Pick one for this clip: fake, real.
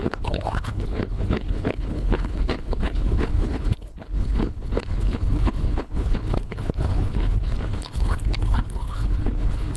fake